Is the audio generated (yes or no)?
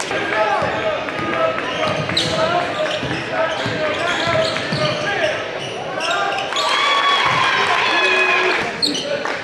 no